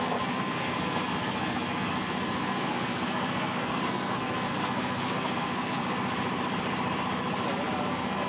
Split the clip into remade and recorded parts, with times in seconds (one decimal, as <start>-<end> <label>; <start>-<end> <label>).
0.0-5.8 remade; 5.8-7.9 recorded; 7.9-8.3 remade